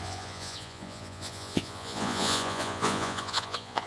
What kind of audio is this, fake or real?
fake